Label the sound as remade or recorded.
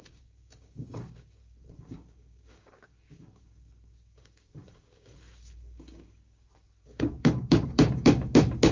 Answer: remade